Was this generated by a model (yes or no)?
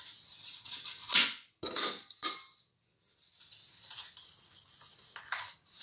no